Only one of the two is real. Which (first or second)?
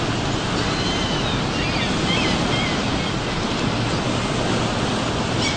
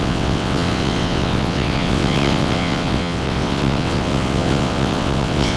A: first